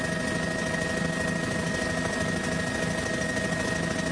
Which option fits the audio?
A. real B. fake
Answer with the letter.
A